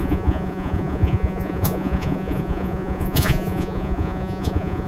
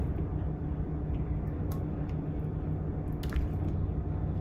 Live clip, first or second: second